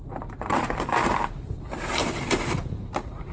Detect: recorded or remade remade